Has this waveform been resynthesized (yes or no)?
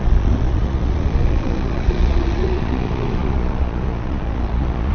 yes